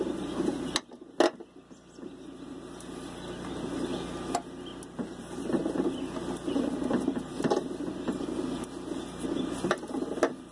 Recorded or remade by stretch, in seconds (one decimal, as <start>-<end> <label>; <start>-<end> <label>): 0.0-10.5 recorded